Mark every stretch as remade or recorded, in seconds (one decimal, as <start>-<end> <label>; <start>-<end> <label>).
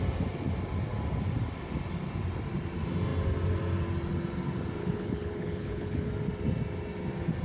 0.0-4.8 recorded; 4.8-6.1 remade; 6.1-7.4 recorded